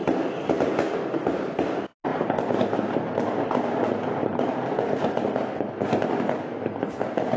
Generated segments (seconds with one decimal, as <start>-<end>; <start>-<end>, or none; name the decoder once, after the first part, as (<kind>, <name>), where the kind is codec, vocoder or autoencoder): none

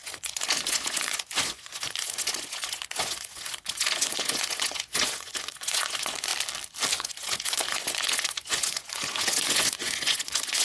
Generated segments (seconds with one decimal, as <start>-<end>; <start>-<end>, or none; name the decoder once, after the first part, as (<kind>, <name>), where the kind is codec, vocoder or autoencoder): 0.0-6.3 (vocoder, Vocos); 6.9-10.6